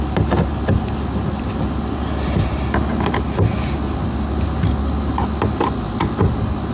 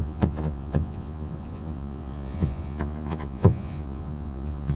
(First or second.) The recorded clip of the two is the first